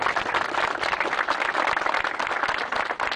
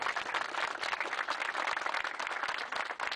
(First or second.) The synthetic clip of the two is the first